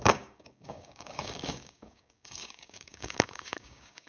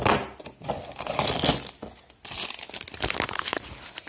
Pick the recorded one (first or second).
second